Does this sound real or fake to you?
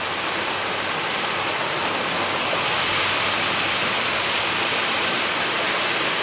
real